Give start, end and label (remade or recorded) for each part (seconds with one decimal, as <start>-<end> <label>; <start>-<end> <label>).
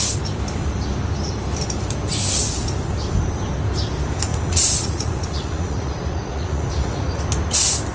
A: 0.0-4.3 recorded; 4.3-7.2 remade; 7.2-7.9 recorded